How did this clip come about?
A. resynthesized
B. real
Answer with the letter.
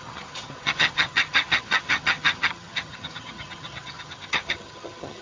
A